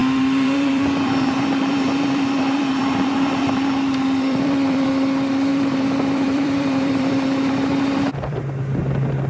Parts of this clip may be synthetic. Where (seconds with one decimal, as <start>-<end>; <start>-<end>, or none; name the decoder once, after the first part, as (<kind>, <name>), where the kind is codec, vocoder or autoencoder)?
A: 0.0-4.9 (vocoder, BigVGAN v2); 5.5-8.4